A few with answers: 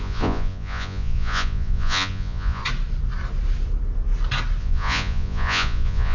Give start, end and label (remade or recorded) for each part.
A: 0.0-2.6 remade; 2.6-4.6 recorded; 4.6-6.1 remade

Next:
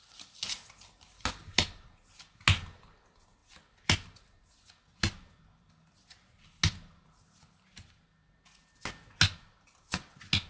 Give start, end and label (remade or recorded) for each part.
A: 0.0-10.5 recorded

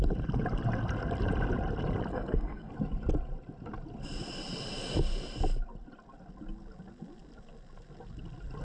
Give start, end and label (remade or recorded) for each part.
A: 0.0-2.1 recorded; 2.1-2.7 remade; 2.7-8.6 recorded

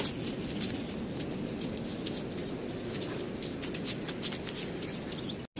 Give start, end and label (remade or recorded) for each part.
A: 0.0-5.6 recorded

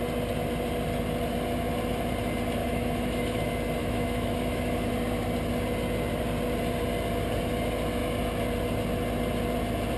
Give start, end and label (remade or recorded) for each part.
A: 0.0-2.6 recorded; 2.6-3.4 remade; 3.4-3.8 recorded; 3.8-4.9 remade; 4.9-10.0 recorded

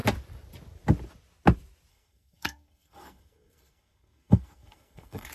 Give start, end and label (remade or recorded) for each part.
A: 0.0-1.9 recorded; 1.9-5.3 remade

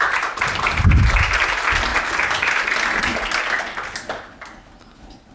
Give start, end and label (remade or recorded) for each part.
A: 0.0-5.3 recorded